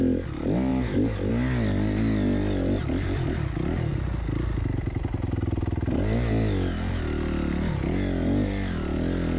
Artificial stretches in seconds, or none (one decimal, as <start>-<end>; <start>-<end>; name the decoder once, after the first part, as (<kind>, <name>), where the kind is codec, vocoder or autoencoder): none